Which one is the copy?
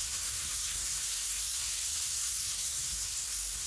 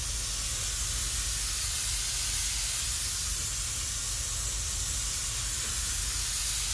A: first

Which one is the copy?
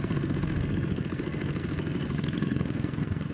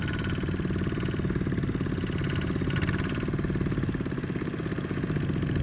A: first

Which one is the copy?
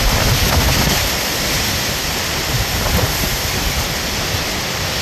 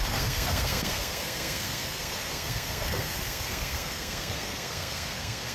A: second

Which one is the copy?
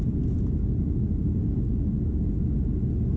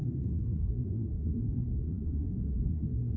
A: second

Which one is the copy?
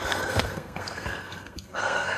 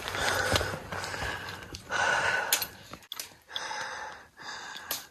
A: first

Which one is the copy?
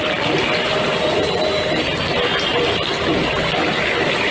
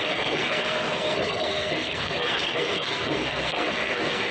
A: second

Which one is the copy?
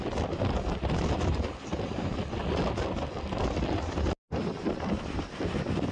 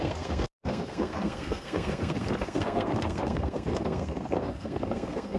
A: second